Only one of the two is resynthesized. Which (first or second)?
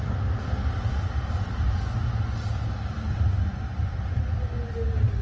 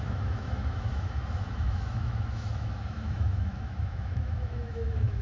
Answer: second